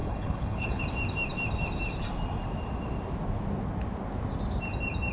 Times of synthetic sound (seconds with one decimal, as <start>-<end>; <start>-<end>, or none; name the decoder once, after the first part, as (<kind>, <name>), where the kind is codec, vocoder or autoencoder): 0.0-0.8 (codec, HILCodec)

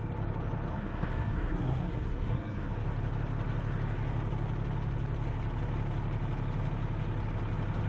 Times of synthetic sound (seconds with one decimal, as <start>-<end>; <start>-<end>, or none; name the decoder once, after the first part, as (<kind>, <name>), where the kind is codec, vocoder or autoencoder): 0.7-2.7 (codec, SNAC)

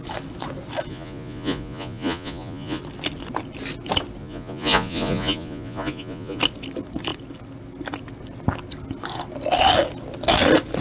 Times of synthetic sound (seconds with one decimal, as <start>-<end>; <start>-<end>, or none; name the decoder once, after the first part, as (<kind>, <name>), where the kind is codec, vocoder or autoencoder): 0.9-2.8 (vocoder, Vocos); 4.2-6.4

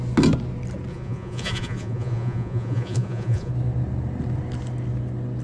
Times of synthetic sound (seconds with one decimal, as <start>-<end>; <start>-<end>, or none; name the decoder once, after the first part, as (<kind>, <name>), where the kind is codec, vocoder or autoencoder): 0.9-3.5 (vocoder, Vocos)

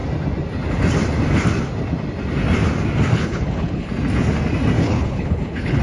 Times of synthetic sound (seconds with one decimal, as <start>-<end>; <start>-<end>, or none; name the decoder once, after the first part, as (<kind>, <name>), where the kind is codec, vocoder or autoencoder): 3.1-3.9 (codec, HILCodec); 4.8-5.8

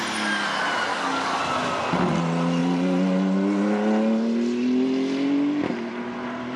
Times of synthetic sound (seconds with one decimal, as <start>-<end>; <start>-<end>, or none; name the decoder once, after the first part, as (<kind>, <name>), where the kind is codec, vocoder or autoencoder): 0.9-1.4 (codec, DAC)

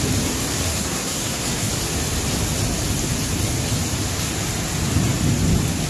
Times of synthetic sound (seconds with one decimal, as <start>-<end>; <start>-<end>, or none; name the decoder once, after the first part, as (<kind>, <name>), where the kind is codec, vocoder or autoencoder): 0.7-1.7 (codec, SNAC)